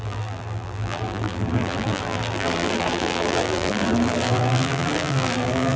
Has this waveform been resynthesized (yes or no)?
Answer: yes